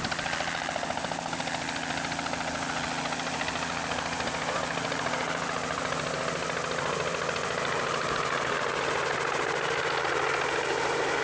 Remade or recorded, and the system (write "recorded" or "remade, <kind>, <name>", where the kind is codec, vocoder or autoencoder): recorded